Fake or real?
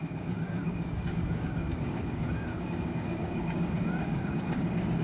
fake